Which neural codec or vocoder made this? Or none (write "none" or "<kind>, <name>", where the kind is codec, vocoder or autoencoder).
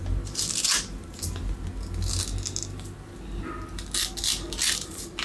none